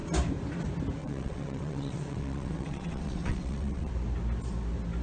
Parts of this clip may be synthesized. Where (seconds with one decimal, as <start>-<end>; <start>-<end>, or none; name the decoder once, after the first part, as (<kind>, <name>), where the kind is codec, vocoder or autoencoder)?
1.0-3.9 (vocoder, WaveNeXt)